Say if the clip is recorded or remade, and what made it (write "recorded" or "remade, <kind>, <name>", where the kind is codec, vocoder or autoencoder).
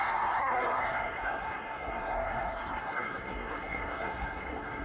remade, codec, SNAC